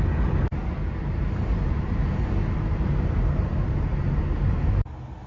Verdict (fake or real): real